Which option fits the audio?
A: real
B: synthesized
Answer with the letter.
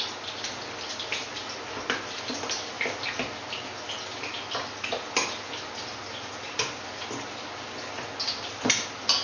A